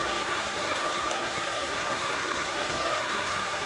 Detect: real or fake fake